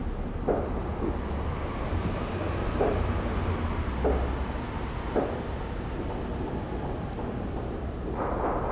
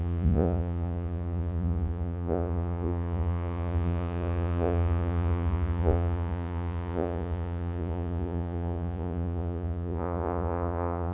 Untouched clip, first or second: first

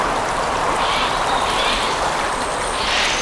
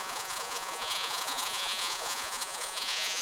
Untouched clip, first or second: first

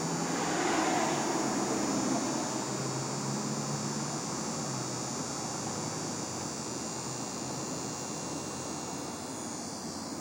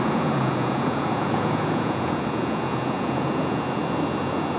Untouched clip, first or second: first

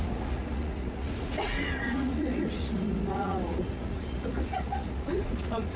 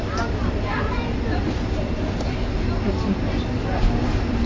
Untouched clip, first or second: second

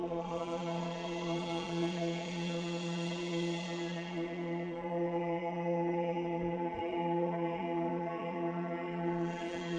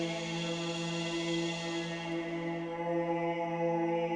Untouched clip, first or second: second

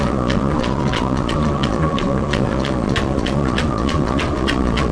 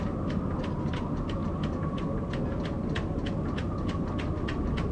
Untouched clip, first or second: second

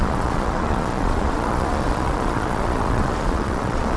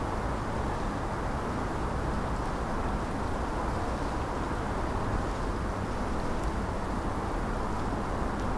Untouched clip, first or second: second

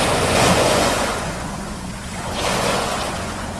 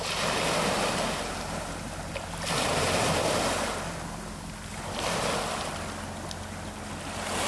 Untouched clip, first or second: second